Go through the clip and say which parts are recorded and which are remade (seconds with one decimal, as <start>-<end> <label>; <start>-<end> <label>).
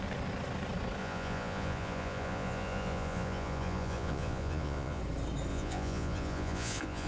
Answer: 0.0-1.0 recorded; 1.0-5.0 remade; 5.0-5.5 recorded; 5.5-7.1 remade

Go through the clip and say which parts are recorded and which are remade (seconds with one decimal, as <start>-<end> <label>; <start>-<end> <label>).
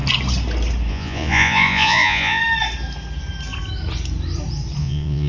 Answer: 0.0-0.9 recorded; 0.9-2.4 remade; 2.4-4.8 recorded; 4.8-5.3 remade